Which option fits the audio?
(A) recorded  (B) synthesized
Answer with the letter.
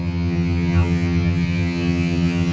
B